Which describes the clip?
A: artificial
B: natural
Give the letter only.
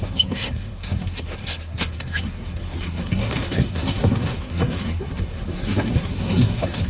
A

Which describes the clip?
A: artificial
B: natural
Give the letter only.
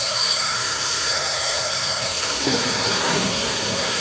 A